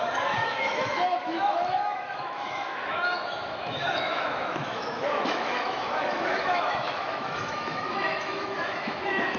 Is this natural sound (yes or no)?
no